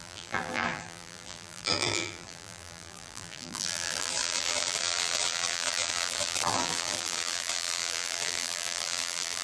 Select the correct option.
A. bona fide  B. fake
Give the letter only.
B